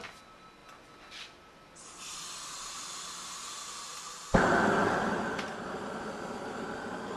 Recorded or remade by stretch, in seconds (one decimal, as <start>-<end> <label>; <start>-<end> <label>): 0.0-7.2 recorded